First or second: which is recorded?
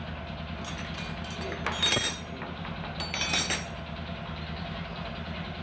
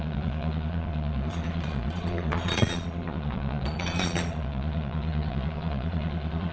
first